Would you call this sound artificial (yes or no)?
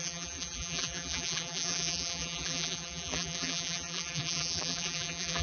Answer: yes